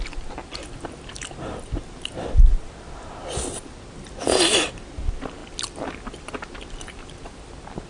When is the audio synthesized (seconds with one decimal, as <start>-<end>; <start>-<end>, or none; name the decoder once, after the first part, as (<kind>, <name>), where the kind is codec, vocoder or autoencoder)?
none